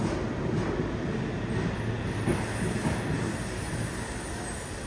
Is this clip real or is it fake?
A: real